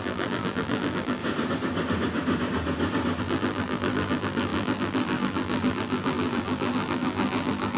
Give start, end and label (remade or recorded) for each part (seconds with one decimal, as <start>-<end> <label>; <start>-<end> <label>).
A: 0.0-1.2 remade; 1.2-3.2 recorded; 3.2-7.8 remade